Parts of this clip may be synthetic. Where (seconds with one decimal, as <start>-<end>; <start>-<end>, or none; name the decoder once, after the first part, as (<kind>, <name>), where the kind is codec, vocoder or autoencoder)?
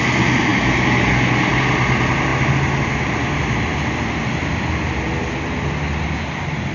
none